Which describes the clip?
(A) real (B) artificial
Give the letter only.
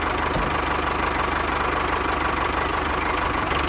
A